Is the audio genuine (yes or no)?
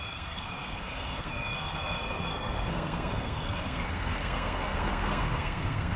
no